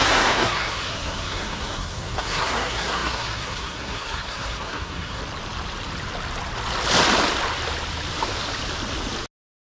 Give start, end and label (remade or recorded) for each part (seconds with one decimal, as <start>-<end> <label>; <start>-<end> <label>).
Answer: 0.0-5.2 remade; 5.2-9.8 recorded